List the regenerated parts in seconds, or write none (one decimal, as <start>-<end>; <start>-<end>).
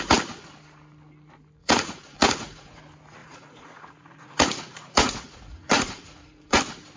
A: 1.6-2.8; 3.2-6.6